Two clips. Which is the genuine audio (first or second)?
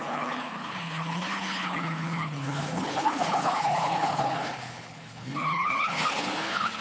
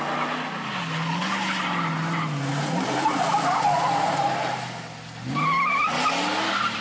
second